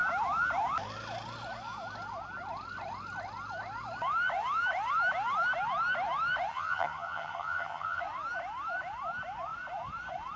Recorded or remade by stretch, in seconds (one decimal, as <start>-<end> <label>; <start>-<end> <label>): 0.0-6.5 recorded; 6.5-8.0 remade; 8.0-10.4 recorded